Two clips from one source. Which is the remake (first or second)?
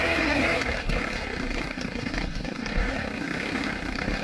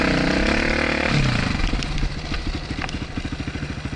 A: first